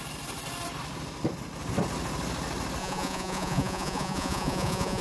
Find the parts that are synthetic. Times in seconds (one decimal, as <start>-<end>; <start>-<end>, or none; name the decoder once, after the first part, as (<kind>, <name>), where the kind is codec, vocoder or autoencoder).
2.8-5.0 (vocoder, Vocos)